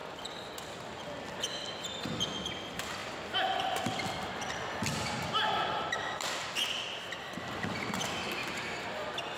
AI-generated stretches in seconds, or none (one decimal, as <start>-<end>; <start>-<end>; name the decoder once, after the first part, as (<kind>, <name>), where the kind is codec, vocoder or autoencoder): none